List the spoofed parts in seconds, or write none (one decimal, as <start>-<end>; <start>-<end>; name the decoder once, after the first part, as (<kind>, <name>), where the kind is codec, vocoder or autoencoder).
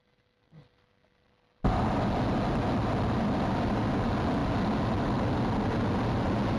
none